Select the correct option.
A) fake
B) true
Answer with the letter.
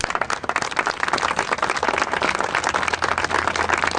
B